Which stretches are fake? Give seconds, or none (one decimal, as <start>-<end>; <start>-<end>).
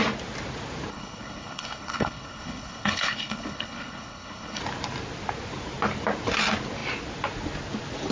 0.9-4.6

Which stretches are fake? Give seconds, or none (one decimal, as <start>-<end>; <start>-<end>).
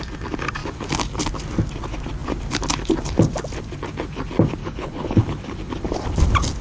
4.6-5.2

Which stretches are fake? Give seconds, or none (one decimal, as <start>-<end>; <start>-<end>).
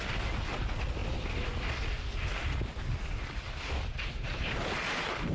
none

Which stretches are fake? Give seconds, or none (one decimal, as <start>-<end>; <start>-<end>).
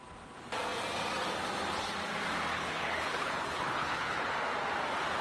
2.5-4.3